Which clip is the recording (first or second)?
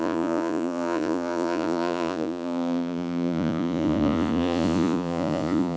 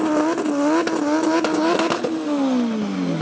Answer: second